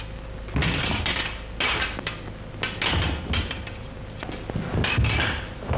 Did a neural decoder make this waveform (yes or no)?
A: no